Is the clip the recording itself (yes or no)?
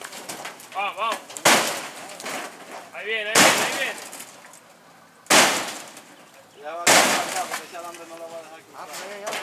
yes